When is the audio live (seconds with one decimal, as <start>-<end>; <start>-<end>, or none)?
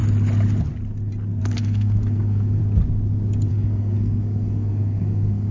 0.0-1.4; 2.6-3.5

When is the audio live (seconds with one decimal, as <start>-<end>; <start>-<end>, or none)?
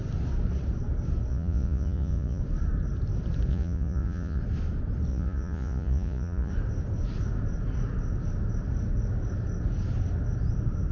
0.0-1.3; 2.4-3.5; 4.4-5.1; 6.5-10.9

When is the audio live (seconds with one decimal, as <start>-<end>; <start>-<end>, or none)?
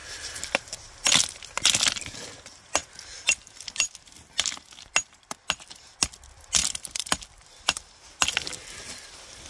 0.5-6.6; 7.8-9.5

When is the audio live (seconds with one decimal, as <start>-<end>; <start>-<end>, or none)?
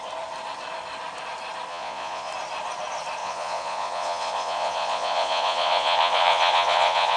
0.0-1.7; 2.3-3.2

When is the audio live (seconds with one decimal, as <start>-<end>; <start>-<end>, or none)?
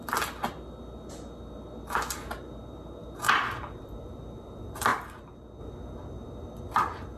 0.0-7.2